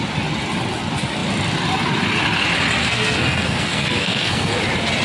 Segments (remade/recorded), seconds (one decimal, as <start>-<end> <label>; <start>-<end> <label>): 0.0-2.8 recorded; 2.8-4.6 remade; 4.6-5.0 recorded